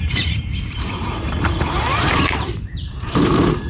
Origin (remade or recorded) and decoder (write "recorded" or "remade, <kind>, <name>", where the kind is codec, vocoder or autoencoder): remade, vocoder, BigVGAN v2